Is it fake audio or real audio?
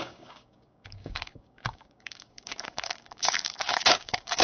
fake